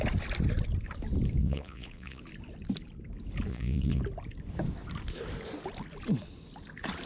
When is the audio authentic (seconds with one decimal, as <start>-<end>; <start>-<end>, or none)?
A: 0.0-1.4; 2.2-3.5; 4.0-7.1